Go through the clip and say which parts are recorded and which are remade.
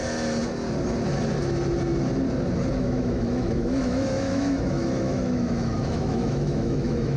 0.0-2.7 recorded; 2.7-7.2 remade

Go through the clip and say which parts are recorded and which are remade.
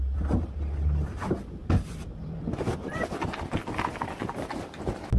0.0-5.2 recorded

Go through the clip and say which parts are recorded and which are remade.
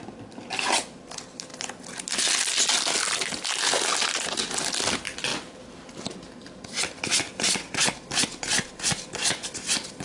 0.0-10.0 recorded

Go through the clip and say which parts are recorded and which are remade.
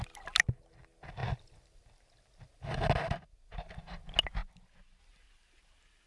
0.0-6.1 recorded